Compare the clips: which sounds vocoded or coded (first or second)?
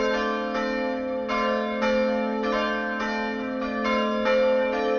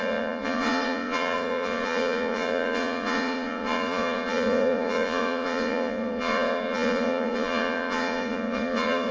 second